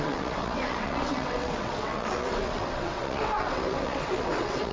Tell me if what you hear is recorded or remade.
remade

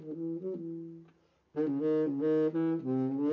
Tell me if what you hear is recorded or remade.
recorded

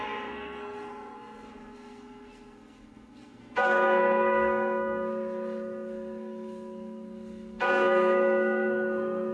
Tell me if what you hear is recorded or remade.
remade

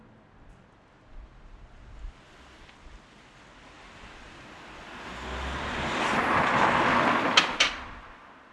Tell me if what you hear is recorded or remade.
recorded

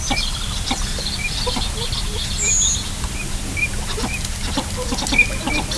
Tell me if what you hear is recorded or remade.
recorded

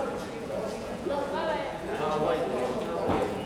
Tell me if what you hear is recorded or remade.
remade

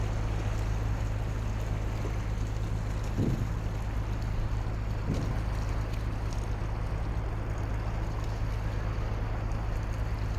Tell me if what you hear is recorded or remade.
recorded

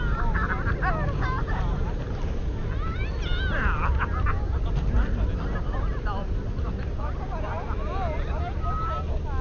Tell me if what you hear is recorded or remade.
recorded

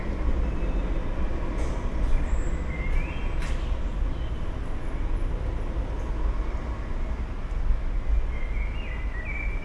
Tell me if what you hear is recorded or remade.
recorded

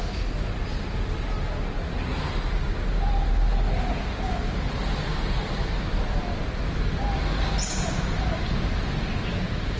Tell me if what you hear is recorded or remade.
recorded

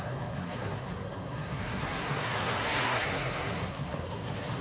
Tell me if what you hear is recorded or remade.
remade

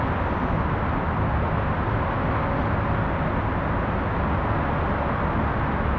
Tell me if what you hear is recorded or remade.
recorded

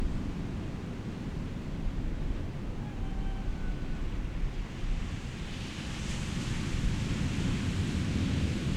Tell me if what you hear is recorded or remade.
recorded